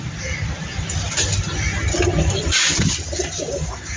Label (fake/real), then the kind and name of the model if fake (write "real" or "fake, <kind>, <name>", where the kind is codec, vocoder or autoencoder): real